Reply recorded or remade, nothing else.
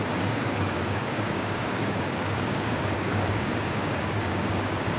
remade